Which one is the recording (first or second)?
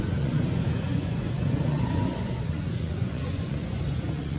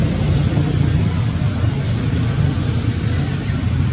second